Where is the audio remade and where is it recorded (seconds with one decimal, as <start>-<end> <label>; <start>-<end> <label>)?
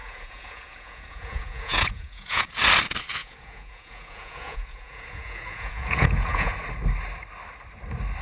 0.0-2.5 remade; 2.5-3.2 recorded; 3.2-6.5 remade; 6.5-8.2 recorded